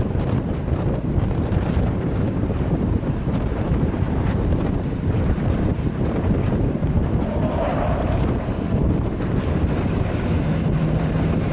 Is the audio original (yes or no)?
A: no